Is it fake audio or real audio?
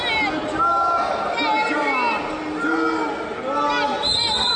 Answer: real